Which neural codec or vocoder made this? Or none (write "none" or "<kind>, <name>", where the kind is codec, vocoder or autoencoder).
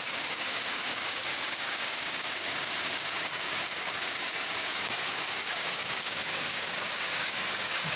codec, DAC